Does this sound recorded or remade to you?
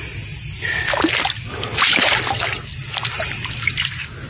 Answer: recorded